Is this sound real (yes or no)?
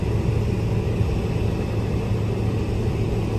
yes